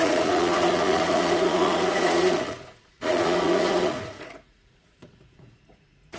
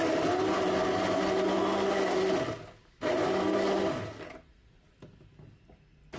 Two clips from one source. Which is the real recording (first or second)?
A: second